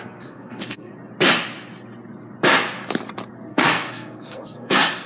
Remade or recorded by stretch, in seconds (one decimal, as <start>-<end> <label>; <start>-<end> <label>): 0.0-0.9 remade; 0.9-3.5 recorded; 3.5-5.1 remade